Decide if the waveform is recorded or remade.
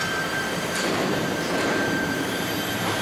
remade